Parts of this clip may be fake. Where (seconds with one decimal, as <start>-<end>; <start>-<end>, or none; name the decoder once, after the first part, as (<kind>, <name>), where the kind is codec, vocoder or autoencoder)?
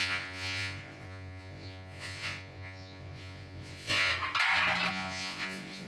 0.0-4.1 (vocoder, Vocos); 4.9-5.9